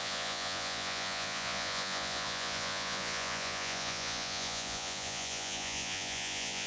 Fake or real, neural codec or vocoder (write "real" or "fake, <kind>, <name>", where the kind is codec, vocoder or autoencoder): fake, vocoder, Vocos